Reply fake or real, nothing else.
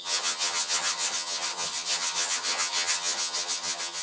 fake